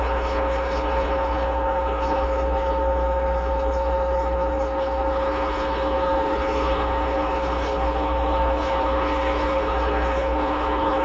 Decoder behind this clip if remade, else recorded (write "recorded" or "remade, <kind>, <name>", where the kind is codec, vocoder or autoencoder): remade, codec, HILCodec